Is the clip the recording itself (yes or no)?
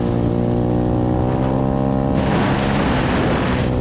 yes